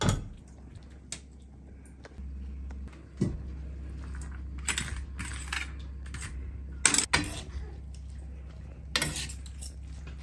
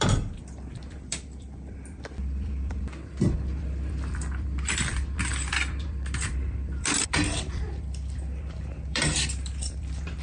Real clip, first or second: first